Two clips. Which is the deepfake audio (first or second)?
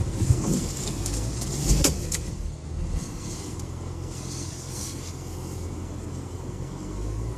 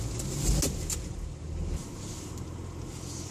first